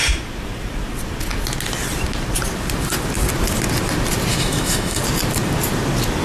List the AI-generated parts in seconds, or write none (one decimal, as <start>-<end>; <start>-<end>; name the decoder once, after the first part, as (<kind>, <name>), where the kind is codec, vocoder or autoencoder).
4.3-5.0 (autoencoder, DAC-VAE)